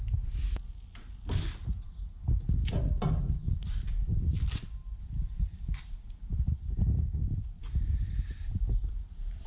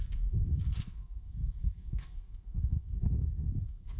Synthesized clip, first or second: second